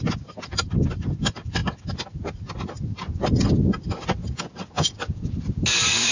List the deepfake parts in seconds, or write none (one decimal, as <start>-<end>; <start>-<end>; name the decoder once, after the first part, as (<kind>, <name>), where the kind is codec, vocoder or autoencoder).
0.7-1.6 (vocoder, BigVGAN v2); 4.9-6.1